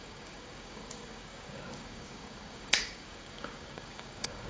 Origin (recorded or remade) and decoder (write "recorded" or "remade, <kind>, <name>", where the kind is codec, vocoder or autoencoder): remade, codec, DAC